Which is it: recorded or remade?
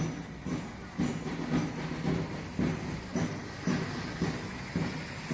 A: recorded